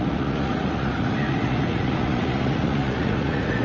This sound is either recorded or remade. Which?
remade